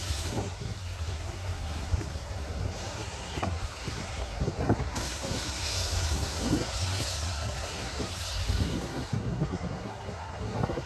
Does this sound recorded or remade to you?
remade